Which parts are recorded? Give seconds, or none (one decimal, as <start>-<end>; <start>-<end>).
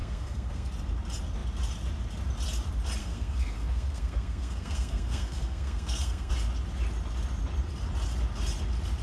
0.7-3.0; 6.3-9.0